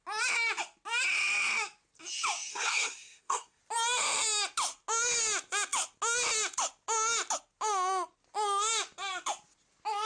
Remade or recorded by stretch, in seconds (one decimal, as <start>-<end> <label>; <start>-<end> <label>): 0.0-2.5 recorded; 2.5-3.6 remade; 3.6-10.1 recorded